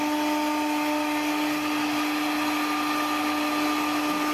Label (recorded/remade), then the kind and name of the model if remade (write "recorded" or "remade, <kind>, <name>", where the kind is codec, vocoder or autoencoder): recorded